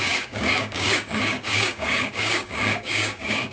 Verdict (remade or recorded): remade